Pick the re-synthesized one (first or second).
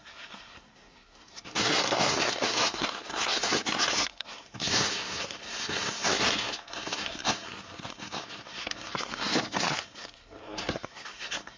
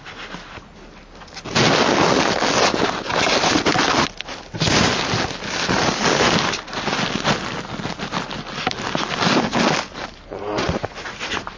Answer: first